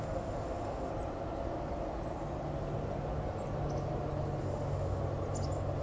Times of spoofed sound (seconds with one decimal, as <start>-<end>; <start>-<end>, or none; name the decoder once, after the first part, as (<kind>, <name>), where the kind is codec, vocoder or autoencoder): 0.0-0.9 (autoencoder, DAC-VAE); 4.4-5.0